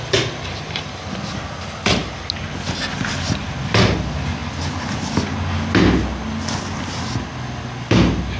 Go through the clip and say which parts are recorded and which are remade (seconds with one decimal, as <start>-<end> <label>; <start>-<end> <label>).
0.0-8.4 recorded